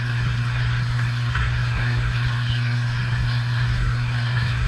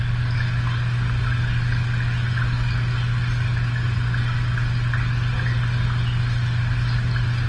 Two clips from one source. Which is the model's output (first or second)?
first